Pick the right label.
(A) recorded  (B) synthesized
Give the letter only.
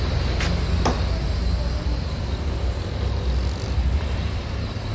A